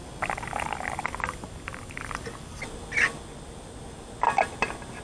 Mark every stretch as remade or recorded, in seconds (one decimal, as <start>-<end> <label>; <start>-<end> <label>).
0.0-5.0 recorded